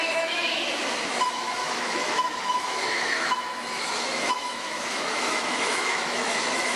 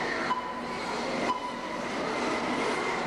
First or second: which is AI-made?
first